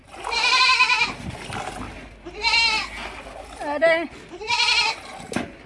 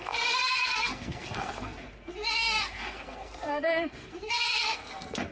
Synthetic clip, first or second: second